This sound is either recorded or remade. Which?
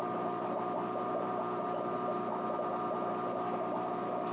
remade